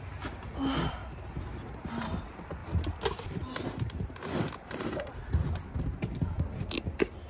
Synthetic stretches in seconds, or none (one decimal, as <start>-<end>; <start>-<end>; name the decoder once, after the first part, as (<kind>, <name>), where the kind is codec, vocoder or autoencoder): none